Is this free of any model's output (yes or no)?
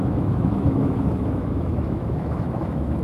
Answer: no